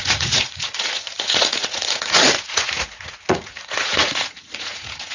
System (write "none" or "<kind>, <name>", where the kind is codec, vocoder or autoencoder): vocoder, Vocos